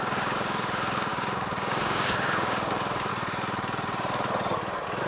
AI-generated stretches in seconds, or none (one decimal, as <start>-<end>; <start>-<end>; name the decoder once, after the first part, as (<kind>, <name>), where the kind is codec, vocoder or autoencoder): 0.0-3.1 (codec, DAC)